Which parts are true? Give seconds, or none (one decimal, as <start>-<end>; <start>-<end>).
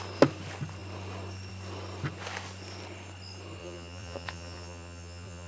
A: 0.0-3.6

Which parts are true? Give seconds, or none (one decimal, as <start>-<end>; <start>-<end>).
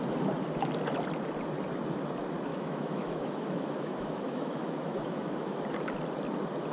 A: 0.0-2.5; 5.6-6.7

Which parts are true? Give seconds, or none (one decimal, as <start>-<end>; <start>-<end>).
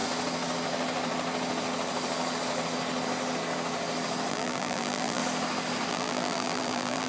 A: 0.0-4.3; 5.2-5.9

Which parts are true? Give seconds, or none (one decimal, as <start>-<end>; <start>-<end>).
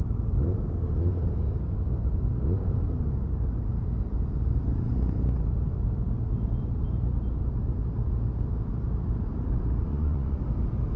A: 0.0-9.9; 10.4-11.0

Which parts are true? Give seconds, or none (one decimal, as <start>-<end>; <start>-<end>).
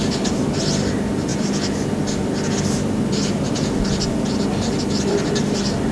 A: 0.0-5.9